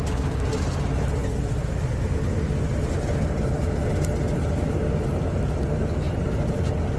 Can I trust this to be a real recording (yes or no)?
yes